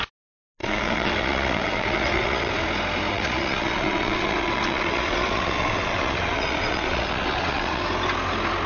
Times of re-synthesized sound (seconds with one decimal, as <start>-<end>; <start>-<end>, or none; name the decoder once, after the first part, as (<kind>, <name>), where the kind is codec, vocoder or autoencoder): 0.6-2.5 (vocoder, WaveNeXt); 3.1-7.8